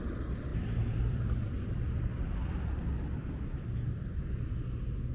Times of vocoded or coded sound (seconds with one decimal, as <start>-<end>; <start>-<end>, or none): 0.5-2.6